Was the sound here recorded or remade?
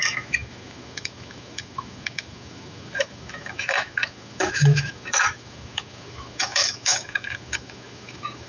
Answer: remade